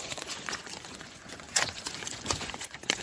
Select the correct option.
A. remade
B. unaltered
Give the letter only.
A